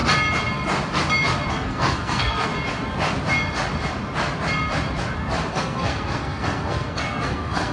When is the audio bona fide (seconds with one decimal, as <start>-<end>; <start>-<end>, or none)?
0.0-1.5; 2.5-5.5